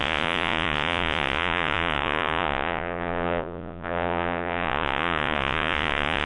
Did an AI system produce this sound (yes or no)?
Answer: yes